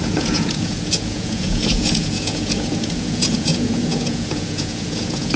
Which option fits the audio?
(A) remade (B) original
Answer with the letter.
A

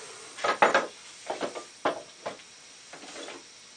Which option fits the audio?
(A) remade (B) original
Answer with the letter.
B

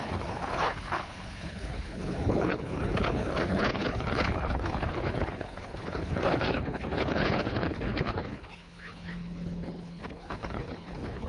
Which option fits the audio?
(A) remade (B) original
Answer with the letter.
A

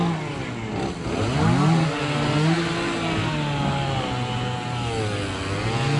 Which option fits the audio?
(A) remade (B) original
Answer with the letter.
B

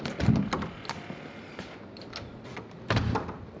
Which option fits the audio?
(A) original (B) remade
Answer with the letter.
A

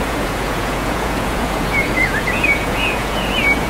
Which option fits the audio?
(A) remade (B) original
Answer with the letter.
A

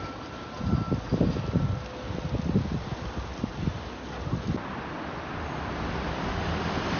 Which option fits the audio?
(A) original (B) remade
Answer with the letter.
A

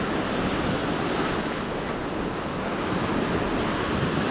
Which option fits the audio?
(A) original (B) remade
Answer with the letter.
A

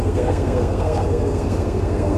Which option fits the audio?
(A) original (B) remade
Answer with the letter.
B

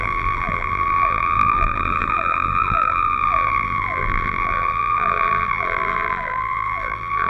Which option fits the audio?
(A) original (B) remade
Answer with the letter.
B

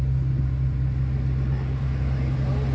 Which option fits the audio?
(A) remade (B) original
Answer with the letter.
B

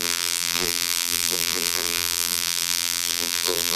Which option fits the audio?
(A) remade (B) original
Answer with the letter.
A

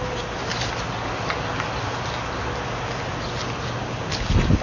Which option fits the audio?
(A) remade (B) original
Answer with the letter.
B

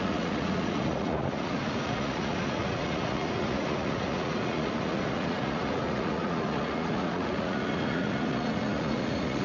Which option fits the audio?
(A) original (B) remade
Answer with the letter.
B